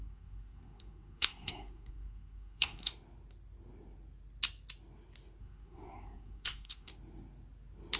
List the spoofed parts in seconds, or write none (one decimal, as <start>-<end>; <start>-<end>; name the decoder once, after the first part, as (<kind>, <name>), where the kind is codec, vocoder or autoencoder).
0.0-2.9 (codec, SNAC); 5.4-6.9